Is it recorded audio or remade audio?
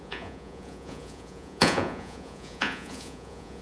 remade